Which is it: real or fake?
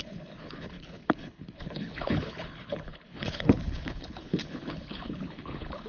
fake